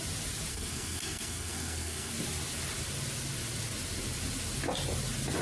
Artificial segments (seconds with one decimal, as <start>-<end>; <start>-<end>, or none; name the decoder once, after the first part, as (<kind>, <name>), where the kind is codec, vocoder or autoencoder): 0.5-2.1 (codec, SNAC)